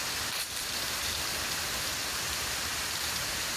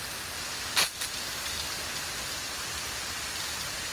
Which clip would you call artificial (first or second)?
first